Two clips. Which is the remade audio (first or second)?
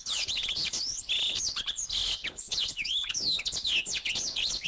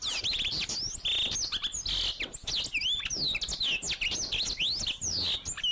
first